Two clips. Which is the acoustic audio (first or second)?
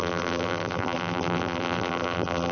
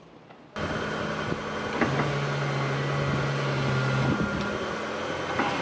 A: second